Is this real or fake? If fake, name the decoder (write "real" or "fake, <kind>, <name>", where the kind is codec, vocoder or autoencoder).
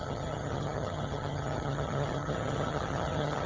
fake, vocoder, HiFi-GAN